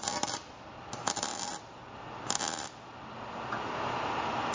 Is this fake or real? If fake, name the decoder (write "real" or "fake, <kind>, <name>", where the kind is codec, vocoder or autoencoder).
real